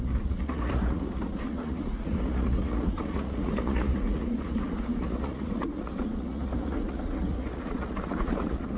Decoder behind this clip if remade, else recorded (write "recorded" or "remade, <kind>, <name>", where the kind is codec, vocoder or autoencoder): remade, vocoder, Vocos